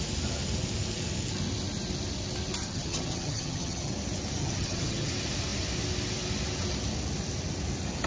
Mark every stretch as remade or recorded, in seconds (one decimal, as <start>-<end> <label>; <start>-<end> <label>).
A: 0.0-2.6 recorded; 2.6-3.9 remade; 3.9-4.4 recorded; 4.4-5.1 remade; 5.1-8.1 recorded